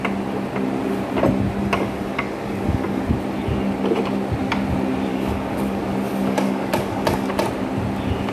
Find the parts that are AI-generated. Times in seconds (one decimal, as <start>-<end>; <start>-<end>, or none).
1.6-3.0; 5.1-5.8; 6.2-7.3